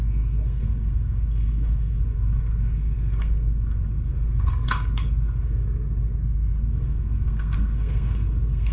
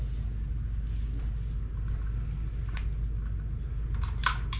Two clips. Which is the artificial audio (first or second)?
first